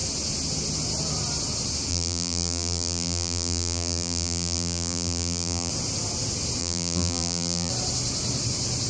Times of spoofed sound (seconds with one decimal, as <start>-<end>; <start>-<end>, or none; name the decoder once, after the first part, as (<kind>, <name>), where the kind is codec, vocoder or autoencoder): 1.9-5.7 (vocoder, BigVGAN v2); 6.6-7.7